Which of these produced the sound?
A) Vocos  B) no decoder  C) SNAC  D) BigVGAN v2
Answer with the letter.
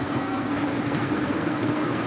C